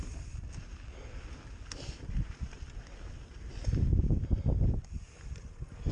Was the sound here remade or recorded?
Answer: recorded